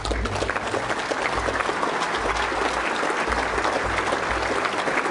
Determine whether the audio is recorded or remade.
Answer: recorded